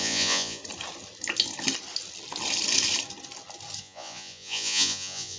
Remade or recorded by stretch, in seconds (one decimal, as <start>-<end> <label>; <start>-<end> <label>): 0.0-0.6 remade; 0.6-3.8 recorded; 3.8-5.4 remade